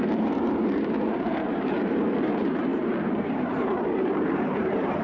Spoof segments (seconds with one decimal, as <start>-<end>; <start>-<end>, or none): 0.0-5.0